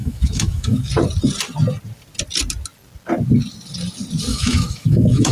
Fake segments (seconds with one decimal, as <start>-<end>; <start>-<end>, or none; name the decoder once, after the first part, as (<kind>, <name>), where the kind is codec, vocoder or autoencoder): 0.0-0.9 (autoencoder, DAC-VAE); 4.3-5.3